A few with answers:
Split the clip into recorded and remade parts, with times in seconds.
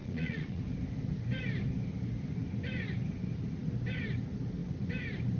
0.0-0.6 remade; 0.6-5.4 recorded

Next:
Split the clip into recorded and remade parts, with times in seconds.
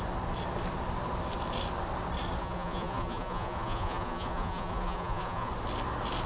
0.0-2.4 recorded; 2.4-5.5 remade; 5.5-6.3 recorded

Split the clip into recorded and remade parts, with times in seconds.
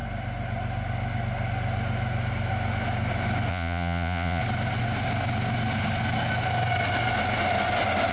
0.0-3.5 recorded; 3.5-4.4 remade; 4.4-8.1 recorded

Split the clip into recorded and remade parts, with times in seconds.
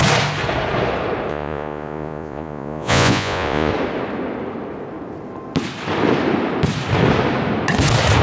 0.0-1.3 recorded; 1.3-3.7 remade; 3.7-8.2 recorded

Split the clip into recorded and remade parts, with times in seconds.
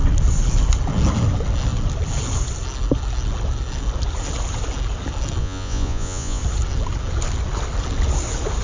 0.0-5.4 recorded; 5.4-6.4 remade; 6.4-8.6 recorded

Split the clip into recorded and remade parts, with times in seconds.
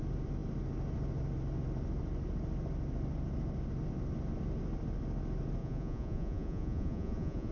0.0-5.6 recorded; 5.6-7.5 remade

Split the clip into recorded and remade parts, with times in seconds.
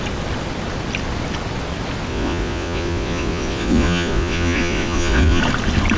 0.0-2.1 recorded; 2.1-5.4 remade; 5.4-6.0 recorded